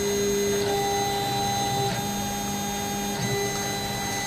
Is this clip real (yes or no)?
yes